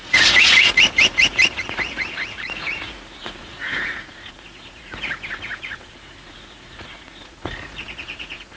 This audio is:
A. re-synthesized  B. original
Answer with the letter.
A